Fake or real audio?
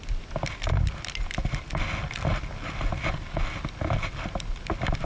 real